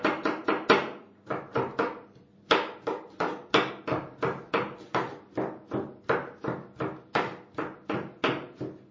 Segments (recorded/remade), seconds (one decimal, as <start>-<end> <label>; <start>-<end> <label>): 0.0-8.9 recorded